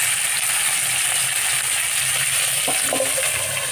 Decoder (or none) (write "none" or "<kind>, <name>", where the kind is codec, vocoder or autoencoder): none